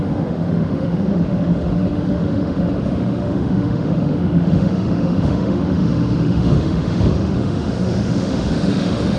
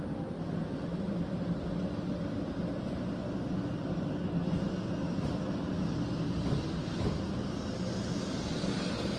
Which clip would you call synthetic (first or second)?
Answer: first